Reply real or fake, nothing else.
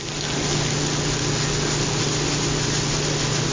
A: real